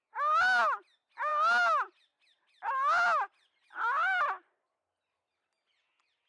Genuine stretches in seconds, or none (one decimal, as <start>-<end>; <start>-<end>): 0.0-6.3